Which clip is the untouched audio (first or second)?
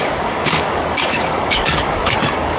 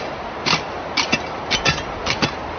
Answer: second